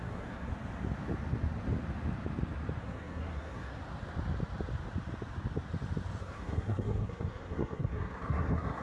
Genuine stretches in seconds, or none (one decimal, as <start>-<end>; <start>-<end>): 0.5-2.8; 3.8-6.2